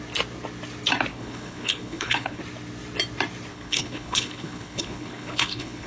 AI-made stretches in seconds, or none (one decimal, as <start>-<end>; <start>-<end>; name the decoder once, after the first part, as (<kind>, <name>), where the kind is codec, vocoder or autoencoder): 1.1-2.4 (codec, HILCodec); 3.5-5.9